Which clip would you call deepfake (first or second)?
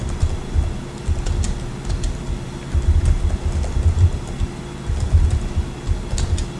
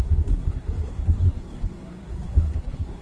second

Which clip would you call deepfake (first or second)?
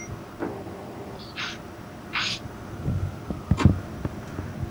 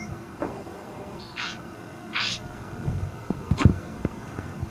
second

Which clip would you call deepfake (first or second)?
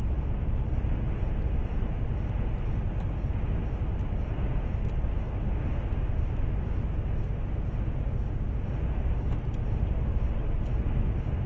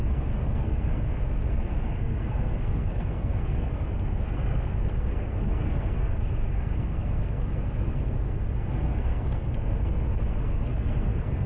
second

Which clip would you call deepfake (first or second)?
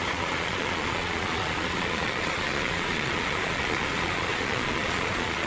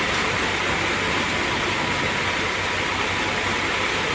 first